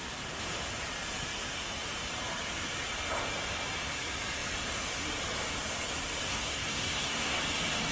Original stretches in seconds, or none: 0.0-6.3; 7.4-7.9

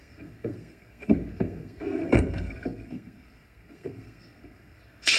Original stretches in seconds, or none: none

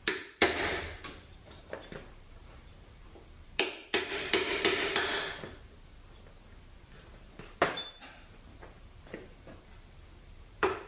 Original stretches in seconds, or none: 3.8-6.6

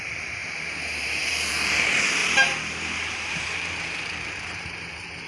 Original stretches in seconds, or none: 2.2-3.3

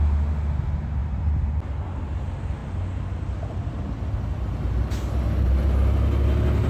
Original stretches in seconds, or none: 0.0-6.7